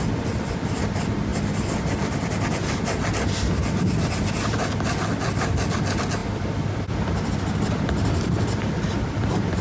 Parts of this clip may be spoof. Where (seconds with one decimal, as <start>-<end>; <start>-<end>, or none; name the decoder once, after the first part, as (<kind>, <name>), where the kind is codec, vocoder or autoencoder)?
none